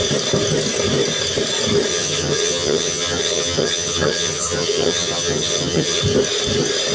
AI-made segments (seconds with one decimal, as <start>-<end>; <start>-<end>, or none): 1.9-6.0